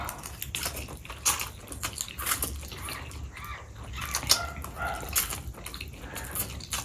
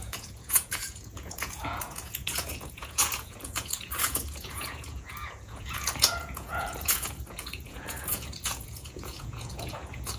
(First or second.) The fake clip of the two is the second